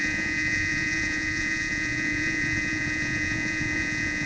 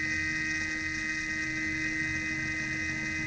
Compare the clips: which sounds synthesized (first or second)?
first